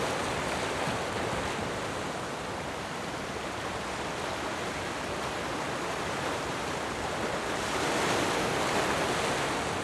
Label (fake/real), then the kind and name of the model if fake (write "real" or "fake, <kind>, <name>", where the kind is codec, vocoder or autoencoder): real